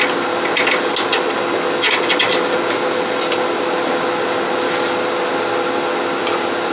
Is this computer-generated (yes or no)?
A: no